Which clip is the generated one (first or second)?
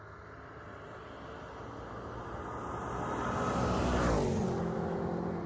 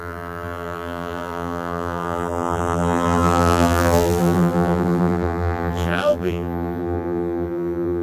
second